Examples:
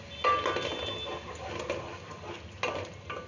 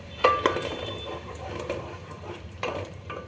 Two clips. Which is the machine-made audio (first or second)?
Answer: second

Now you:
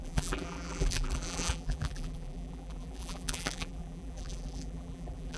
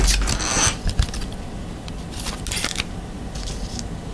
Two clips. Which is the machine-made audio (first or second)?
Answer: first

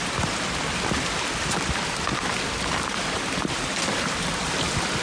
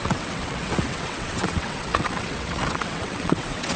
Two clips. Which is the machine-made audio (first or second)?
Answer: second